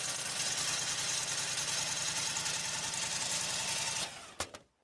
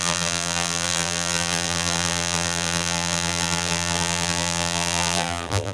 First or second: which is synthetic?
second